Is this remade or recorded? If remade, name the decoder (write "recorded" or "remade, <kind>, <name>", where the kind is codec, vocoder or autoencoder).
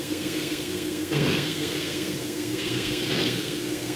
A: remade, codec, SNAC